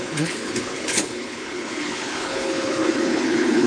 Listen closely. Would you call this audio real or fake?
fake